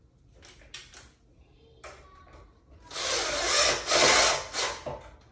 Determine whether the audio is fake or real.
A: real